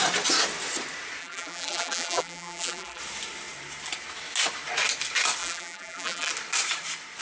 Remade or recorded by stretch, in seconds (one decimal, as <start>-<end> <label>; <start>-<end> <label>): 0.0-1.2 recorded; 1.2-3.0 remade; 3.0-5.4 recorded; 5.4-6.3 remade; 6.3-7.2 recorded